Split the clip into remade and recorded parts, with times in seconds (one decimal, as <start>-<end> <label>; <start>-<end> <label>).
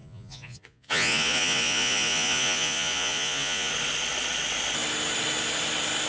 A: 0.0-3.7 remade; 3.7-6.1 recorded